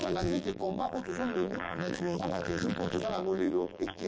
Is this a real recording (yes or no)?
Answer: no